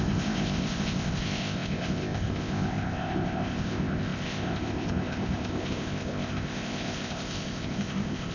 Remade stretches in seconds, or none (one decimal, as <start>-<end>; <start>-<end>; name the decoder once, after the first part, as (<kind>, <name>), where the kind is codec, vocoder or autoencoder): 0.0-8.3 (codec, ZipCodec)